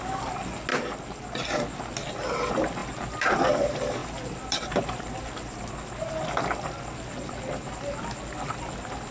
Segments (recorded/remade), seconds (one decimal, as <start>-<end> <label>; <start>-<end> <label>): 0.0-4.0 recorded; 4.0-5.7 remade; 5.7-9.1 recorded